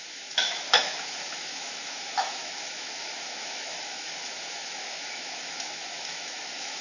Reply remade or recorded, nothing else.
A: remade